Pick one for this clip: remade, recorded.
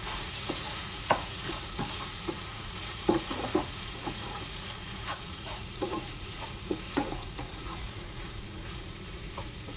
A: remade